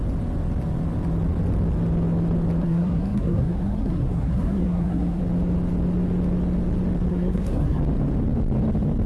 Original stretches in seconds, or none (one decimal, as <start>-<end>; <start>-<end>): 0.0-2.6; 5.2-7.1; 7.8-9.1